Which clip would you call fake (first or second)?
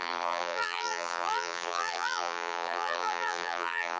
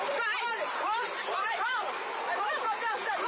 first